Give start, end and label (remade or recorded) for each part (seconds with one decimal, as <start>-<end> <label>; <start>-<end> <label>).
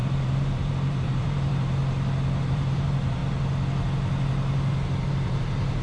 0.0-1.8 remade; 1.8-2.4 recorded; 2.4-3.2 remade; 3.2-5.1 recorded; 5.1-5.8 remade